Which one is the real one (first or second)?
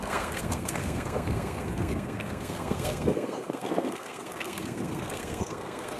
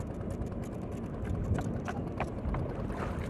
second